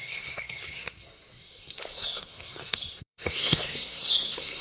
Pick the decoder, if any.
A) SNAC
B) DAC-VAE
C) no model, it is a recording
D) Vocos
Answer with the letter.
A